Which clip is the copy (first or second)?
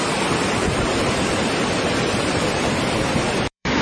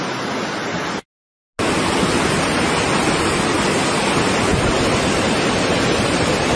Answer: first